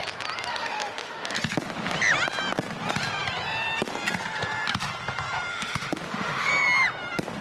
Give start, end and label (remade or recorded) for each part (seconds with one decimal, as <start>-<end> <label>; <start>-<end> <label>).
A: 0.0-0.5 recorded; 0.5-1.4 remade; 1.4-5.5 recorded; 5.5-6.5 remade; 6.5-7.4 recorded